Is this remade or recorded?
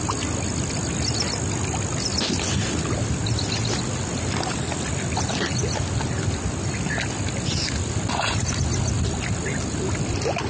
recorded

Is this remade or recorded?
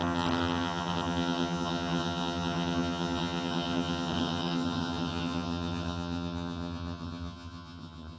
remade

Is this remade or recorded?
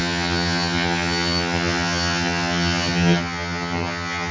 remade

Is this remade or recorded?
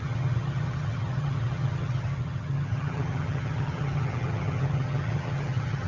remade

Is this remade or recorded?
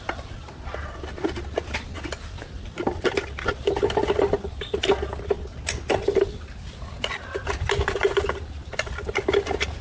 recorded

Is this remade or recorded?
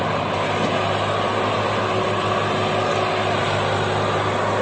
recorded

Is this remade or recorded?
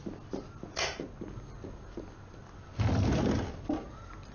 recorded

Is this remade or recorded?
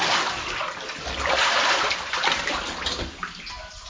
recorded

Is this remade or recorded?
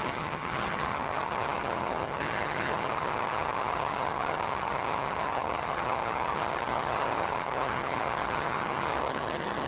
remade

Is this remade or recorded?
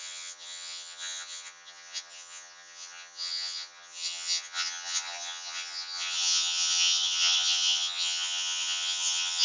remade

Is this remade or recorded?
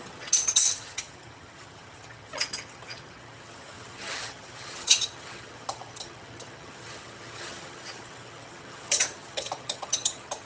remade